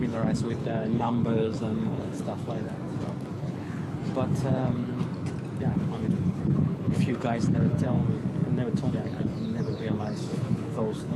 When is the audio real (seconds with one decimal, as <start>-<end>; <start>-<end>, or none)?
2.7-3.3; 4.0-4.5; 5.0-5.6; 8.0-8.9